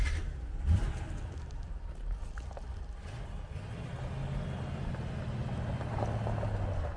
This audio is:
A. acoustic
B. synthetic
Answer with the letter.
A